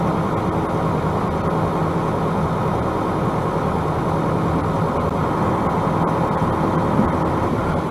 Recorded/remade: recorded